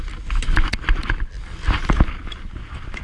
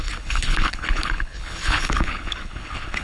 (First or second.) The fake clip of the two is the second